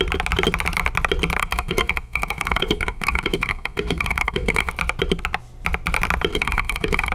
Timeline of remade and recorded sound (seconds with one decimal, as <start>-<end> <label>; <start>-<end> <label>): 0.0-1.4 recorded; 1.4-4.7 remade; 4.7-6.3 recorded; 6.3-7.1 remade